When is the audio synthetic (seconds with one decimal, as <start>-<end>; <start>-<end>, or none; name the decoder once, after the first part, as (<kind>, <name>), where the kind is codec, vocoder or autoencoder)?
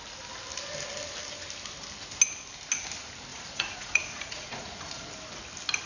3.3-4.9 (vocoder, Vocos)